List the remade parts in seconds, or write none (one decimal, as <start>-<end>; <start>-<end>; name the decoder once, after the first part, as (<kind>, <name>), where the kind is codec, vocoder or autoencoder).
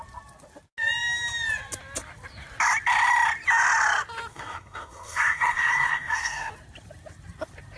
4.3-6.5 (codec, SNAC)